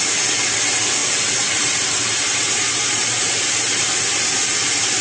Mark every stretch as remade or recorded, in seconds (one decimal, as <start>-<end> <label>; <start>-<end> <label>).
0.0-1.0 recorded; 1.0-4.0 remade; 4.0-5.0 recorded